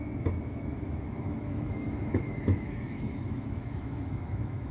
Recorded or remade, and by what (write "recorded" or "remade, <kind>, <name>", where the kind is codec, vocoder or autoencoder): remade, autoencoder, DAC-VAE